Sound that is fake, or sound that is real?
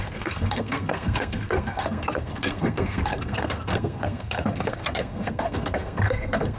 fake